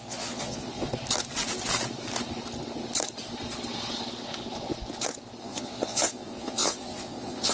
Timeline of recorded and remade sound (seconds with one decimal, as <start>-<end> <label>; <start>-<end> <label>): 0.0-0.9 remade; 0.9-5.4 recorded; 5.4-7.5 remade